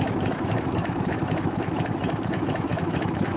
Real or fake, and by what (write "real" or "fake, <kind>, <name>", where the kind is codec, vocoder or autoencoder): fake, autoencoder, DAC-VAE